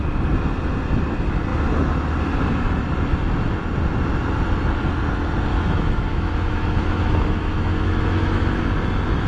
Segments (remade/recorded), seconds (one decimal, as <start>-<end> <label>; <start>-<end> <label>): 0.0-5.5 recorded; 5.5-8.6 remade; 8.6-9.3 recorded